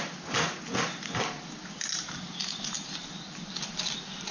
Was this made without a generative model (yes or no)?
yes